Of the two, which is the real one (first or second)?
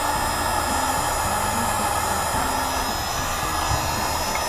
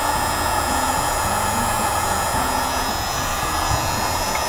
first